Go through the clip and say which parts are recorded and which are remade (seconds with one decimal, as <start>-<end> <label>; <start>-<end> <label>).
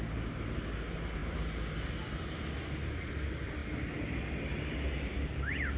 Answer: 0.0-1.2 recorded; 1.2-3.1 remade; 3.1-5.8 recorded